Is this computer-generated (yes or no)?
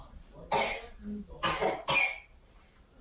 no